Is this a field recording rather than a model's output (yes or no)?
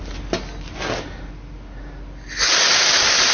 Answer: yes